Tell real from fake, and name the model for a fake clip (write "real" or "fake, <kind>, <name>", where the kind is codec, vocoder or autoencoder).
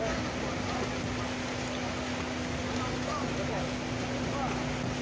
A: real